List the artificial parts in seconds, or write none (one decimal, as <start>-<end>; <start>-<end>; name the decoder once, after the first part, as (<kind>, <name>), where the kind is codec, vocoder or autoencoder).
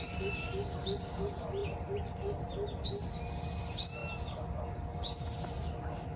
none